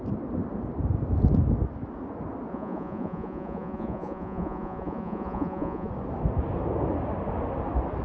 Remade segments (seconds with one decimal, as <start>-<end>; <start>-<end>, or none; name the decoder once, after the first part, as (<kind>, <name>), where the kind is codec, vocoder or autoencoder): 2.5-5.9 (vocoder, Vocos)